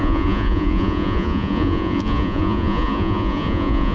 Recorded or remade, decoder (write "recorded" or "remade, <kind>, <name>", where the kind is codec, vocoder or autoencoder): remade, vocoder, Vocos